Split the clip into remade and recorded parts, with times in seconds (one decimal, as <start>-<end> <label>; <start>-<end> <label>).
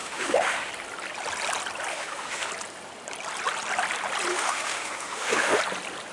0.0-0.7 remade; 0.7-1.9 recorded; 1.9-2.5 remade; 2.5-4.3 recorded; 4.3-5.6 remade; 5.6-6.1 recorded